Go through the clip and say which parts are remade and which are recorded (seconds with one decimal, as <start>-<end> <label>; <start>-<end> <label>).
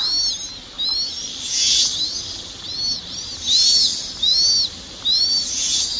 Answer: 0.0-6.0 recorded